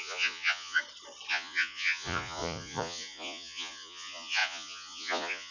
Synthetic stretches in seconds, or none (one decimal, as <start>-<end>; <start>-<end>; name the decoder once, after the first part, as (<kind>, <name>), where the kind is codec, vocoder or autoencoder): 0.0-0.8 (vocoder, Vocos); 1.3-5.5